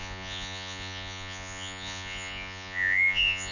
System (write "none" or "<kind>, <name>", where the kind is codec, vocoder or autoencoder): vocoder, Vocos